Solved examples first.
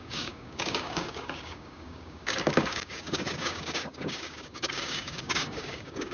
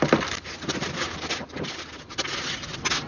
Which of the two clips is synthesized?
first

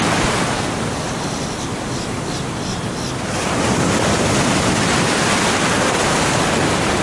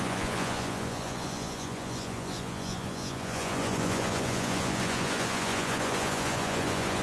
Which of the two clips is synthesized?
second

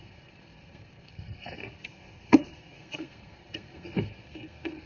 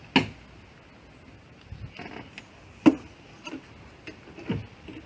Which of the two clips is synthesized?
first